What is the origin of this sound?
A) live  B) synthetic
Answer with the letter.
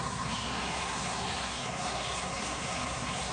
B